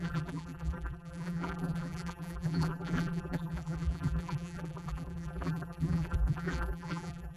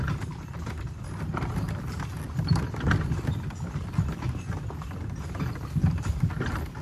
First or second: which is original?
second